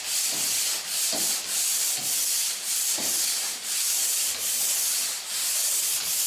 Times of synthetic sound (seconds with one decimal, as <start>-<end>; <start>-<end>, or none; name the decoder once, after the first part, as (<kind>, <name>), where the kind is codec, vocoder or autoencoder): 2.8-3.4 (vocoder, BigVGAN v2)